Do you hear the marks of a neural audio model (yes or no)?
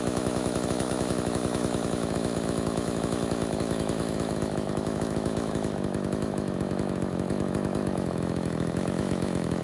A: yes